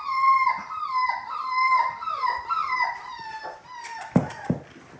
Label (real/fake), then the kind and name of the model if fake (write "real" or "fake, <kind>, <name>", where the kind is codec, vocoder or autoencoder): real